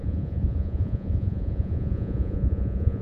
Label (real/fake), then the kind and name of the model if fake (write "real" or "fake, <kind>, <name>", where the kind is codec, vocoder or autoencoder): fake, vocoder, Vocos